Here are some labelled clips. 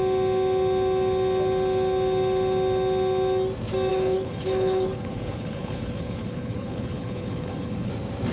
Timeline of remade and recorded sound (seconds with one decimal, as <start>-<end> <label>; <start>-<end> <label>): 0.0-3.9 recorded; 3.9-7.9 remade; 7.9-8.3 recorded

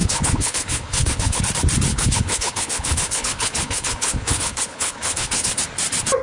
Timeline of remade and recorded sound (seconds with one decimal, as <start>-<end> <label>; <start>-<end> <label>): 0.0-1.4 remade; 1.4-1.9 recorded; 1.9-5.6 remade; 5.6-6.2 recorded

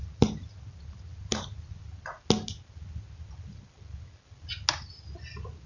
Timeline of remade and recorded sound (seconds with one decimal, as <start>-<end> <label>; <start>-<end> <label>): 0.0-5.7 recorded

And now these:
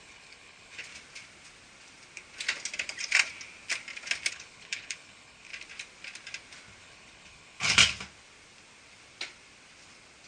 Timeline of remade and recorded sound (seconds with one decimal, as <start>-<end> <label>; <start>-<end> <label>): 0.0-0.9 remade; 0.9-4.3 recorded; 4.3-5.5 remade; 5.5-6.8 recorded; 6.8-7.8 remade; 7.8-10.3 recorded

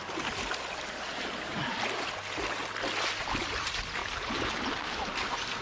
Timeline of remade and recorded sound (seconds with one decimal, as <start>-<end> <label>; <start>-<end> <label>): 0.0-5.6 recorded

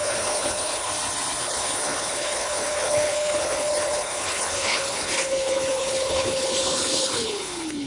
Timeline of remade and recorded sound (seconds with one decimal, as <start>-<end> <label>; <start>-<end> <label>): 0.0-0.9 remade; 0.9-1.4 recorded; 1.4-7.9 remade

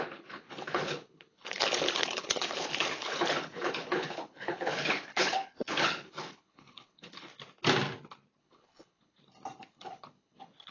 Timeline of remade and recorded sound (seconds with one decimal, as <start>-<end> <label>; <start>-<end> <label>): 0.0-7.3 remade; 7.3-8.4 recorded; 8.4-9.2 remade; 9.2-9.7 recorded; 9.7-10.7 remade

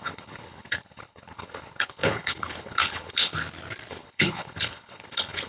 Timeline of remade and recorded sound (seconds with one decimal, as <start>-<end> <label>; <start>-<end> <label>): 0.0-3.3 remade; 3.3-3.9 recorded; 3.9-5.5 remade